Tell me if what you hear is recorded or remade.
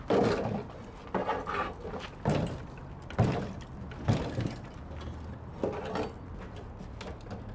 recorded